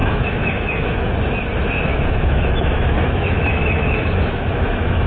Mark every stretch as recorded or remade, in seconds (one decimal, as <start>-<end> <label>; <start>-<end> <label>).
0.0-1.1 remade; 1.1-1.9 recorded; 1.9-5.1 remade